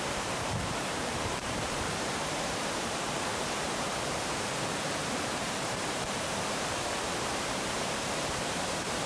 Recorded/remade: remade